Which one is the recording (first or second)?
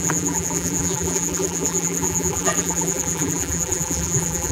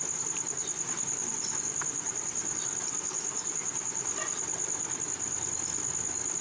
second